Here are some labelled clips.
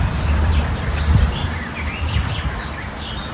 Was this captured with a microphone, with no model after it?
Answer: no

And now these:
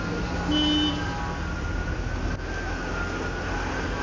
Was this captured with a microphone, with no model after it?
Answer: yes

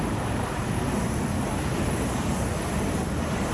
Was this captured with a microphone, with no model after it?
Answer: no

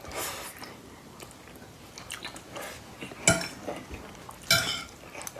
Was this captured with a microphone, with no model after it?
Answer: yes